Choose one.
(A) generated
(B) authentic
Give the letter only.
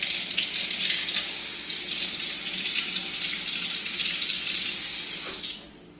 B